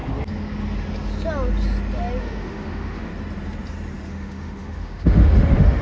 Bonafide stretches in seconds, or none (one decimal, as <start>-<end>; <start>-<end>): 0.0-2.2; 3.1-4.1

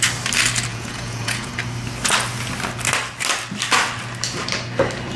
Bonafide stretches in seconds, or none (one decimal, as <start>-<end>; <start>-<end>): 0.0-0.7; 1.5-5.2